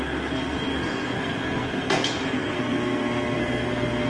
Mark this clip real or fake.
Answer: fake